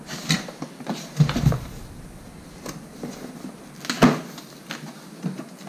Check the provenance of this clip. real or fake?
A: real